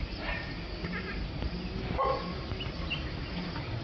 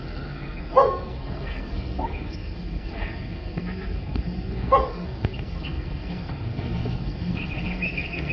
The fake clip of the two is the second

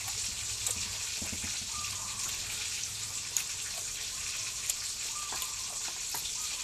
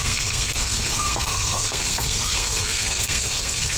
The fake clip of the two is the second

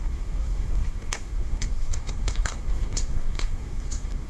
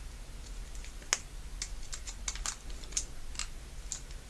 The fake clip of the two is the first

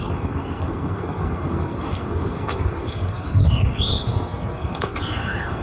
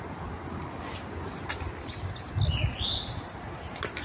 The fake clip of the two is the first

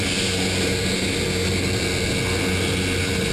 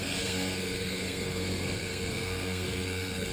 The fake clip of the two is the second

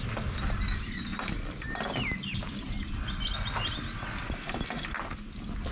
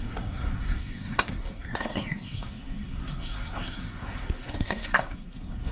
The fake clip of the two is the second